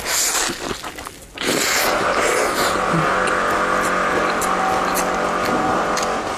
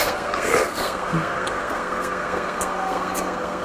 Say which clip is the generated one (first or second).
second